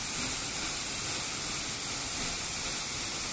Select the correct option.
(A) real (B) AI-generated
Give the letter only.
A